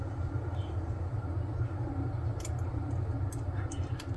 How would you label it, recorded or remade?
remade